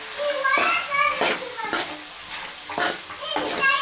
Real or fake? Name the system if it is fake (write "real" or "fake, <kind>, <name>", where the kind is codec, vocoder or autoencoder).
real